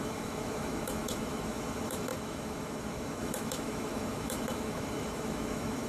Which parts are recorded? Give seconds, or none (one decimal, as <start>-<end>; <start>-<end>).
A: none